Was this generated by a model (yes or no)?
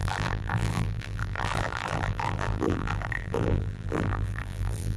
yes